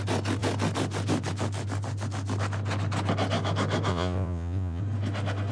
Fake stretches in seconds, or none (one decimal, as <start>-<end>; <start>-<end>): 3.9-4.8